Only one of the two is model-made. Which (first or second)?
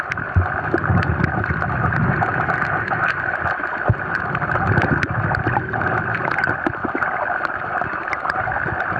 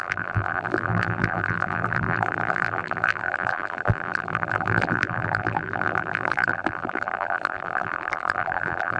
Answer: second